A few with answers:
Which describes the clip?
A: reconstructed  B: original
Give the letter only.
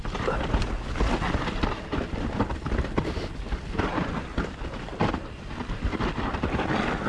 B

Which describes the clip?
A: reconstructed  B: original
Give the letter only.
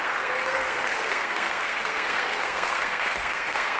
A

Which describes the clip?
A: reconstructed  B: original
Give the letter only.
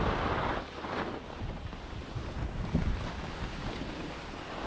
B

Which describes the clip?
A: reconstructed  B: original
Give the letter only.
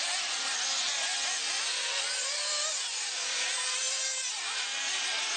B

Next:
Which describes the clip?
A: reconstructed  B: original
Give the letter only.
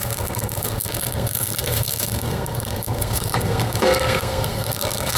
A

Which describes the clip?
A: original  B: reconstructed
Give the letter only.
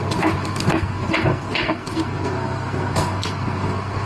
B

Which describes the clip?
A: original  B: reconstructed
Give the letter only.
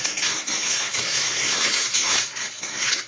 B